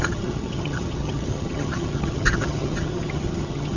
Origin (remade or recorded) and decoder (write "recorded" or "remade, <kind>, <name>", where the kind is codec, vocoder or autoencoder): remade, vocoder, HiFi-GAN